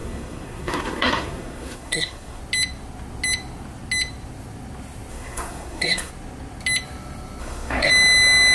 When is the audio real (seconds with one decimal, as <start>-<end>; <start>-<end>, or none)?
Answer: 2.4-5.1; 6.1-7.4; 7.9-8.5